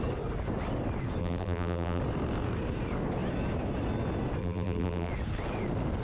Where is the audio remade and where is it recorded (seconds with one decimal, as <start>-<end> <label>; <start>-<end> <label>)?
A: 0.0-1.2 recorded; 1.2-2.0 remade; 2.0-4.4 recorded; 4.4-5.1 remade; 5.1-6.0 recorded